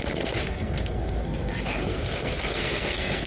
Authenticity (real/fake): fake